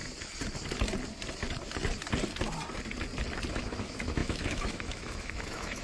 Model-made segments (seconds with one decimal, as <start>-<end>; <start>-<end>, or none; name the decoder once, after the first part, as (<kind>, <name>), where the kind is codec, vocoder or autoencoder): 3.5-5.8 (autoencoder, DAC-VAE)